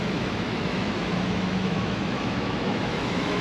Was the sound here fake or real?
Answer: fake